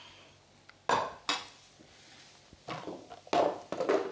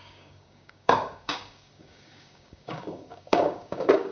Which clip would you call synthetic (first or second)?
second